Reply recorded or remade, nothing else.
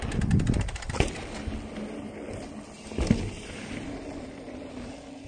recorded